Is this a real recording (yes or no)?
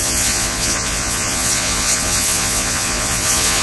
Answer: no